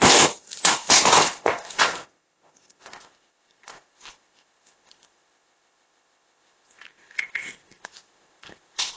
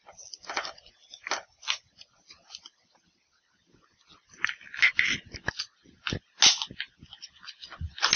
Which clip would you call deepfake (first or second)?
first